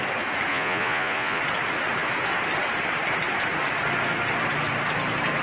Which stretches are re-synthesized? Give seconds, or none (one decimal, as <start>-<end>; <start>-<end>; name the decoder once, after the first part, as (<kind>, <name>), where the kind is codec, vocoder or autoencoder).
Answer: 0.5-1.4 (vocoder, Vocos)